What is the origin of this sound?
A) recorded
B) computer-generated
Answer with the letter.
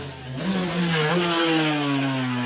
A